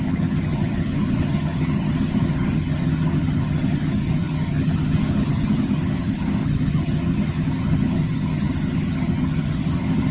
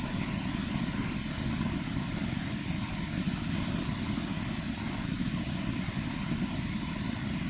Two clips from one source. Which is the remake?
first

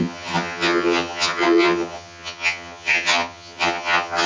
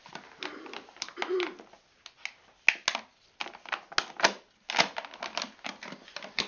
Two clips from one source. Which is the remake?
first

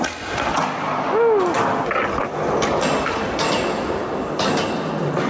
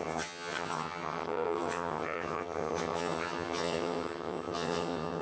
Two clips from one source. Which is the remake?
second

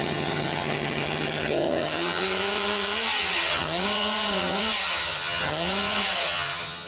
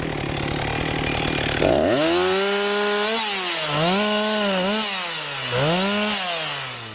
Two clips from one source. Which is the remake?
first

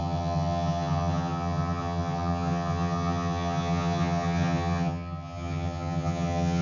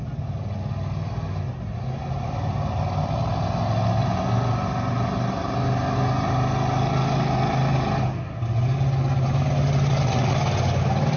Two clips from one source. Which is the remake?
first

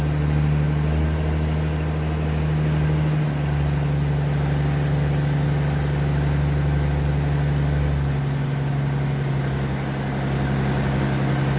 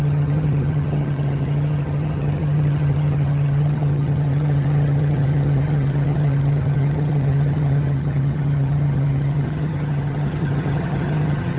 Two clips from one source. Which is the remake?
second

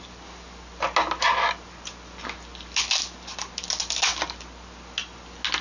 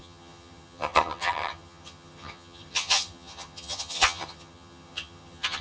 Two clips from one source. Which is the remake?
second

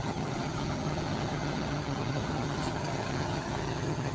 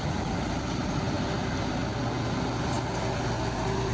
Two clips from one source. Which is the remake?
first